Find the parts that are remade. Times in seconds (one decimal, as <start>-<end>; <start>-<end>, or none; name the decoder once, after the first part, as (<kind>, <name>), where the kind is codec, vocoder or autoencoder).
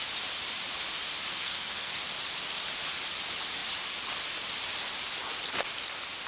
1.3-1.9 (codec, SNAC)